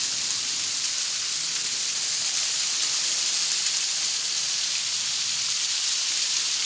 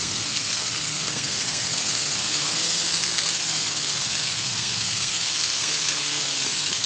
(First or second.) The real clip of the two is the first